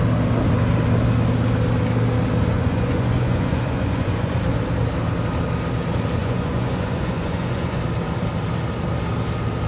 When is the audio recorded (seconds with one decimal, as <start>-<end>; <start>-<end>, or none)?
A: 0.0-2.5; 4.4-6.2; 7.8-9.7